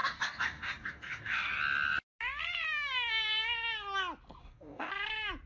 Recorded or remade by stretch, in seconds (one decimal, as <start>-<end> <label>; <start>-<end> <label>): 0.0-1.5 remade; 1.5-4.4 recorded; 4.4-4.9 remade; 4.9-5.5 recorded

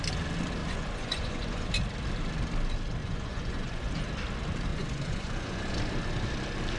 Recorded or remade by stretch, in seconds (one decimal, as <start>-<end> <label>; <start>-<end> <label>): 0.0-0.6 recorded; 0.6-1.7 remade; 1.7-3.0 recorded; 3.0-3.9 remade; 3.9-4.7 recorded; 4.7-5.6 remade; 5.6-6.8 recorded

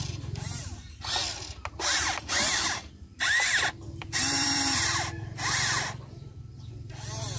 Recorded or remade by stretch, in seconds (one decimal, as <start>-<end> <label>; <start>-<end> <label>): 0.0-3.1 recorded; 3.1-6.7 remade; 6.7-7.4 recorded

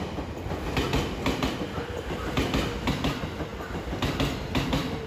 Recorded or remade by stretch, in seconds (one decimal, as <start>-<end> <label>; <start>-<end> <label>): 0.0-5.1 recorded

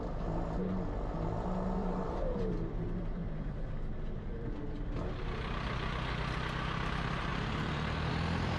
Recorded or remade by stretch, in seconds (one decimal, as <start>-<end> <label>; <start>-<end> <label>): 0.0-1.8 recorded; 1.8-2.4 remade; 2.4-3.2 recorded; 3.2-4.5 remade; 4.5-7.3 recorded; 7.3-8.1 remade; 8.1-8.6 recorded